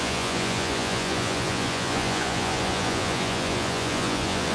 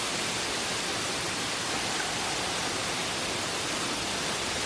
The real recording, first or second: second